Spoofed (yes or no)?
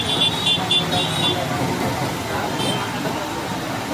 no